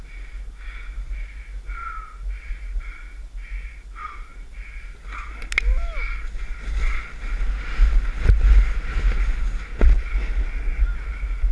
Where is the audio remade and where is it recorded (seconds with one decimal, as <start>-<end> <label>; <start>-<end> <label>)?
0.0-11.5 recorded

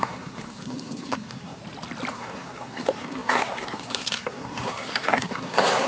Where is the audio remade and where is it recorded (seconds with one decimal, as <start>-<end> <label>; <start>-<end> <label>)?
0.0-1.6 remade; 1.6-2.1 recorded; 2.1-5.9 remade

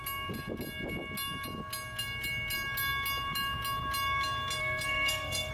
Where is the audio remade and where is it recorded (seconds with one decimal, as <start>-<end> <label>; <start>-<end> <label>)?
0.0-4.6 recorded; 4.6-5.5 remade

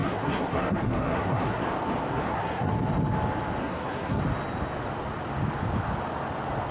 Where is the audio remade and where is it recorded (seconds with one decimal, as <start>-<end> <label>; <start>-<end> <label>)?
0.0-1.6 remade; 1.6-2.1 recorded; 2.1-2.7 remade; 2.7-3.6 recorded; 3.6-4.2 remade; 4.2-6.7 recorded

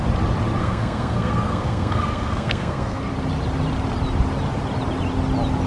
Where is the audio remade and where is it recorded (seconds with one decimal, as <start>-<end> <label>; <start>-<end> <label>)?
0.0-0.6 recorded; 0.6-3.0 remade; 3.0-5.7 recorded

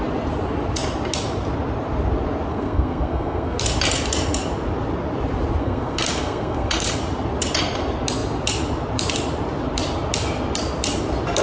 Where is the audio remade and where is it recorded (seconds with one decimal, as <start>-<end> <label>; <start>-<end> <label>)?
0.0-2.5 recorded; 2.5-3.6 remade; 3.6-5.6 recorded; 5.6-7.0 remade; 7.0-11.4 recorded